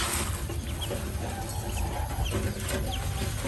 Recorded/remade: recorded